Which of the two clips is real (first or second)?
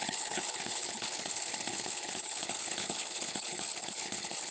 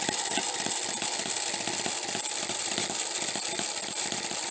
second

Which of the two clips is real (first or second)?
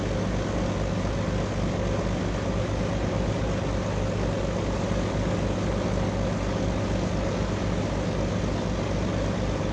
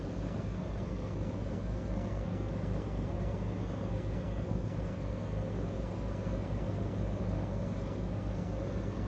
first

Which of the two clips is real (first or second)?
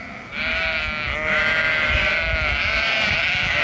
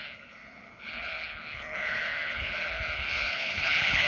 first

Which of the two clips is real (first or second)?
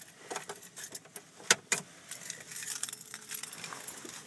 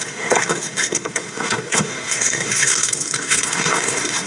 first